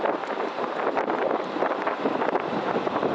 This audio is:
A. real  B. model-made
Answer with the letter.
B